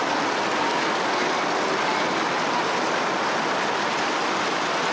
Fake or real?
real